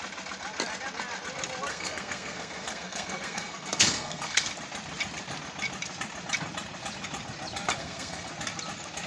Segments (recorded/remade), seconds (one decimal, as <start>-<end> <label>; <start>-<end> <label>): 0.0-1.7 recorded; 1.7-4.5 remade; 4.5-7.8 recorded; 7.8-8.3 remade; 8.3-9.1 recorded